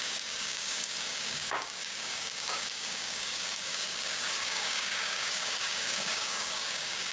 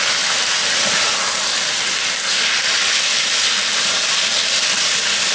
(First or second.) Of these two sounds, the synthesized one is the first